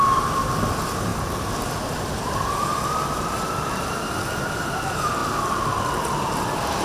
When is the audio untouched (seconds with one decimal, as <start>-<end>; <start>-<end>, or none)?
0.0-1.1; 4.1-6.8